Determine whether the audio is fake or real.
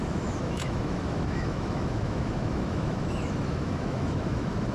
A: fake